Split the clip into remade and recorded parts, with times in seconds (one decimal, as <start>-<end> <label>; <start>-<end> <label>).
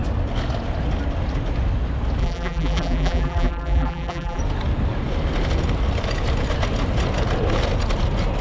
0.0-2.2 recorded; 2.2-4.4 remade; 4.4-8.4 recorded